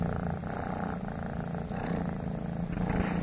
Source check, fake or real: real